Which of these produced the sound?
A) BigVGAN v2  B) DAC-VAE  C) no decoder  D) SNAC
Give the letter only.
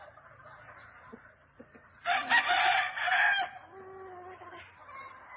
C